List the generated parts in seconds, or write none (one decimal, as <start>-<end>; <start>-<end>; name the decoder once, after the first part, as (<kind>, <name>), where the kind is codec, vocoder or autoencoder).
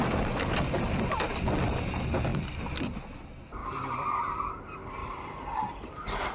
3.6-4.2 (vocoder, BigVGAN v2); 5.0-6.3